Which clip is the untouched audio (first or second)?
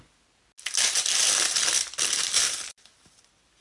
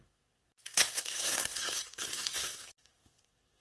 first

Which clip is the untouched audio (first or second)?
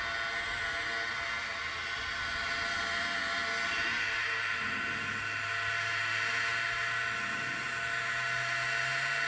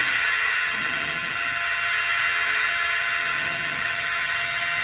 first